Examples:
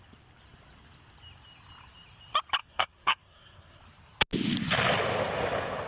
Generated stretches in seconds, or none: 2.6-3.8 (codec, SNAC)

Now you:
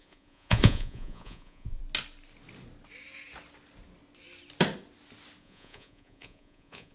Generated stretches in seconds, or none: 0.0-1.8 (vocoder, Vocos); 5.4-6.9

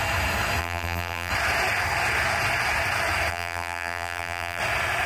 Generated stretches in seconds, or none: 0.6-1.3 (vocoder, BigVGAN v2); 3.3-4.6

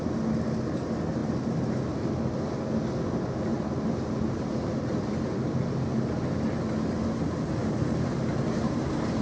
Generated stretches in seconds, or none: 1.2-2.1 (vocoder, BigVGAN v2); 3.5-5.8; 7.6-8.4

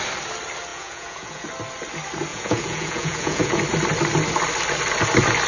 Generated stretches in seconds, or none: 0.7-1.4 (vocoder, Vocos); 2.3-3.6